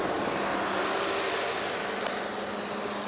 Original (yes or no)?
yes